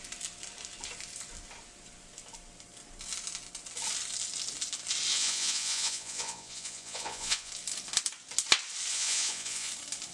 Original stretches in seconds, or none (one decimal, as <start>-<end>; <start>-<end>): 0.0-5.1; 7.5-8.9; 9.7-10.1